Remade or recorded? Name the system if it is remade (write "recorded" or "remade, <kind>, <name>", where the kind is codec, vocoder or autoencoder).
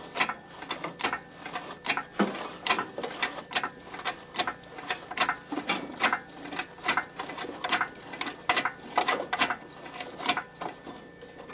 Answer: recorded